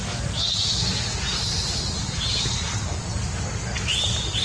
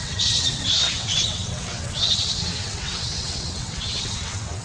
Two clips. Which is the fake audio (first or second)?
second